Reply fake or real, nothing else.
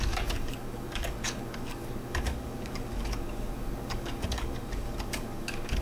fake